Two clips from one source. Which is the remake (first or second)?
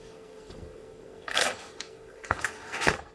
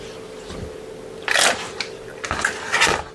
first